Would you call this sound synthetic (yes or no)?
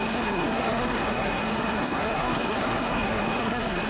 yes